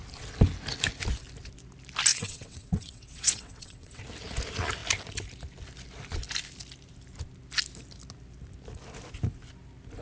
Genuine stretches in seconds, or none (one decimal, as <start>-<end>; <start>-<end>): 0.0-2.1; 4.0-10.0